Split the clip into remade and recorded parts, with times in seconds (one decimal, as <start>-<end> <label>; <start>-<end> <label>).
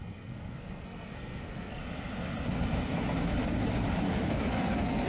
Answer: 0.0-1.8 remade; 1.8-4.3 recorded; 4.3-5.1 remade